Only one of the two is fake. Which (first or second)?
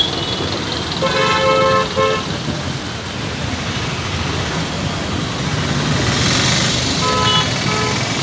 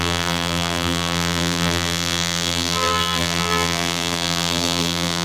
second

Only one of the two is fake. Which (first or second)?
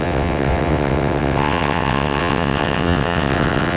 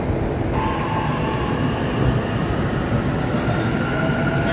first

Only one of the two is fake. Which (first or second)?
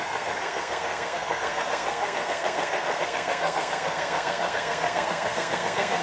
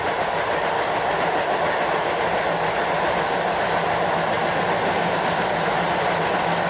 first